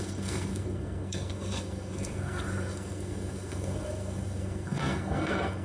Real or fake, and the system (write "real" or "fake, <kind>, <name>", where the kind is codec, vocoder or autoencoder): fake, codec, SNAC